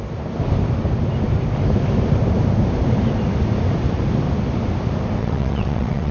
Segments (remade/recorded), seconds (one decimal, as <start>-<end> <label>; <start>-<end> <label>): 0.0-5.2 recorded; 5.2-6.1 remade